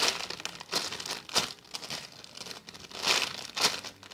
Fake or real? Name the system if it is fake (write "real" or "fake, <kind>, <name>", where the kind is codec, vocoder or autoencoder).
real